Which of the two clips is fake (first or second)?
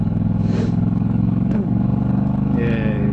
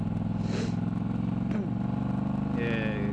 first